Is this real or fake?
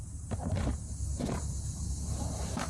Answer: fake